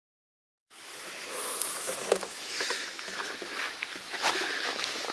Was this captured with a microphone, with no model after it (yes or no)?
no